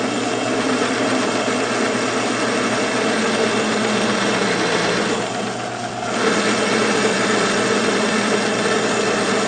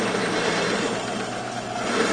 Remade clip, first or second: second